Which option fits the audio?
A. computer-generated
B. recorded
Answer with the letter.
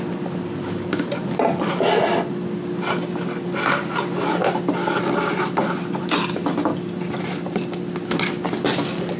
B